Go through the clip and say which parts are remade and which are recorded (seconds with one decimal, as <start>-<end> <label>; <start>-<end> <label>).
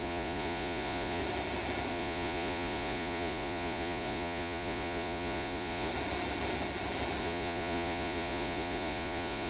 0.0-1.2 remade; 1.2-1.9 recorded; 1.9-5.9 remade; 5.9-7.2 recorded; 7.2-9.5 remade